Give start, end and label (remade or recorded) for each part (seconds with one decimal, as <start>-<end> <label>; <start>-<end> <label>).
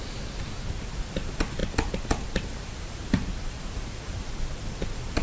0.0-1.6 remade; 1.6-2.4 recorded; 2.4-5.2 remade